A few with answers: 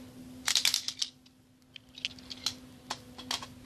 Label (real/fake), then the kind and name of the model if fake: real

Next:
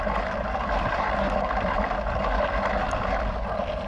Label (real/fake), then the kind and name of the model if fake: fake, vocoder, BigVGAN v2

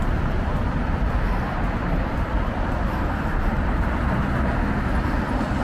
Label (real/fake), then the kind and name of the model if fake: fake, vocoder, BigVGAN v2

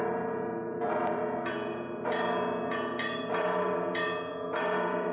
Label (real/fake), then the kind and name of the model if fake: fake, vocoder, BigVGAN v2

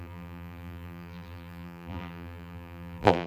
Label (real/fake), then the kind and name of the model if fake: fake, vocoder, BigVGAN v2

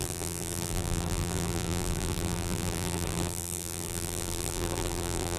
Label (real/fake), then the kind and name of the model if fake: fake, vocoder, BigVGAN v2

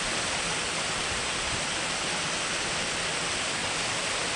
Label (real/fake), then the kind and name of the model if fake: real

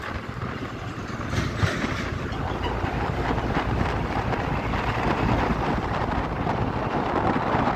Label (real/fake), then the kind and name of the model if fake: real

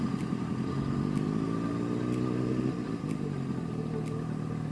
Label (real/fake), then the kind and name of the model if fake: real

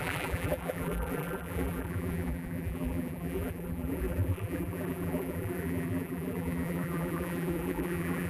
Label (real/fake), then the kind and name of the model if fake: fake, vocoder, BigVGAN v2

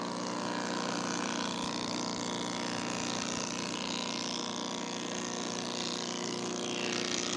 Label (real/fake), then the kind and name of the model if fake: real